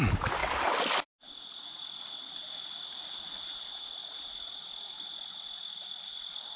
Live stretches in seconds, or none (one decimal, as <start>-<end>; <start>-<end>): 0.0-6.6